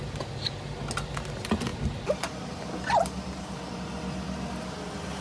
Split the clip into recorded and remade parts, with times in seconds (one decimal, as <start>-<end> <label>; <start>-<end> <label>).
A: 0.0-5.2 recorded